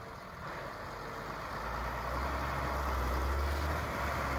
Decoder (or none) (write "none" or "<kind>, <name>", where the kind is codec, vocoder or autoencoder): none